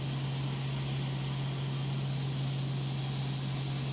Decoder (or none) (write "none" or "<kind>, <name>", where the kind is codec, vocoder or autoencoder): none